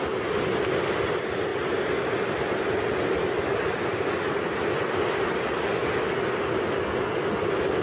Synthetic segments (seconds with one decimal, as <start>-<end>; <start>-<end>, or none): none